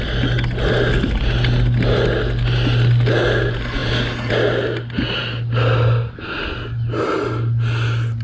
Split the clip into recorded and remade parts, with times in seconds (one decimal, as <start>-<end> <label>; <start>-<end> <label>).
0.0-8.2 recorded